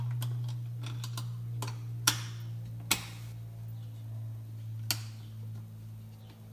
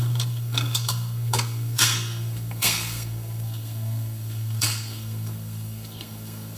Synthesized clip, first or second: second